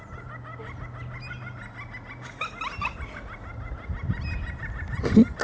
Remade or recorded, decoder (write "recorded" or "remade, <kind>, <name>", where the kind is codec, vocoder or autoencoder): recorded